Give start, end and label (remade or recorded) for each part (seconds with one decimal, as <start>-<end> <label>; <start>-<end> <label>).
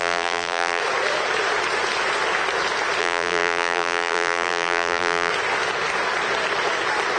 0.0-0.8 remade; 0.8-3.0 recorded; 3.0-5.3 remade; 5.3-7.2 recorded